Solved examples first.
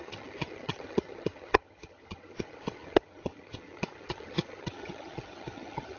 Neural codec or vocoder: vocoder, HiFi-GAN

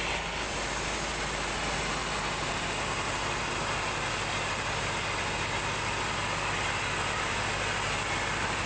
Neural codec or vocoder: none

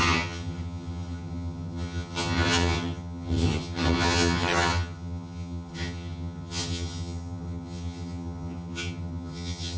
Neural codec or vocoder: vocoder, HiFi-GAN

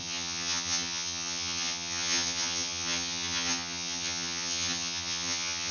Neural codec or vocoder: vocoder, HiFi-GAN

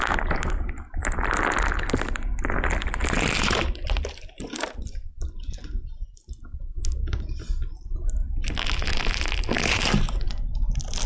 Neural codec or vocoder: none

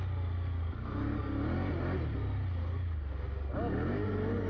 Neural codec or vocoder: none